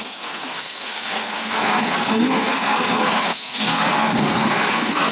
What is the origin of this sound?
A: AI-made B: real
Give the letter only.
A